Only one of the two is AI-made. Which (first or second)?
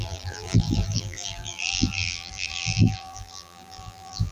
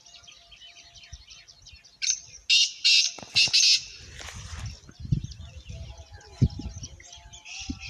first